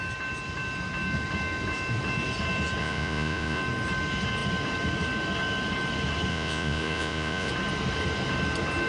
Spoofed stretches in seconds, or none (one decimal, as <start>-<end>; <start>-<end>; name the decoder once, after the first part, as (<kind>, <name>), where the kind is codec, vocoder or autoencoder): 2.8-3.6 (vocoder, Vocos); 6.3-7.5